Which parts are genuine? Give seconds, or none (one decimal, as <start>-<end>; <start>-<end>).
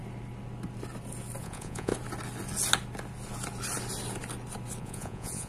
0.0-1.4; 1.9-4.8